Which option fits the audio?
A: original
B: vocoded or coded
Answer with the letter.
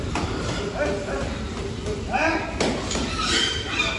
A